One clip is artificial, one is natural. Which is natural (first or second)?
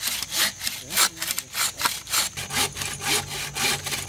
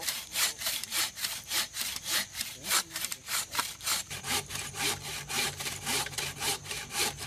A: first